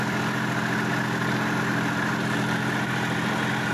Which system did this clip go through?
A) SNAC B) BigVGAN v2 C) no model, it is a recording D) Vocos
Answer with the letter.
C